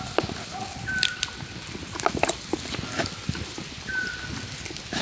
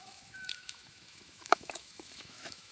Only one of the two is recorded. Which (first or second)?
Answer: first